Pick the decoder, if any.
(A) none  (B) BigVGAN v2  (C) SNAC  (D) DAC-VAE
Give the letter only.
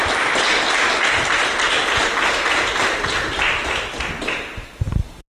A